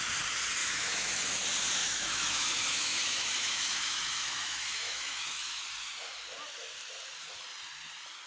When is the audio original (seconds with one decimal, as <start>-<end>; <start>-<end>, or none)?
0.0-0.6; 1.2-1.8; 5.6-8.3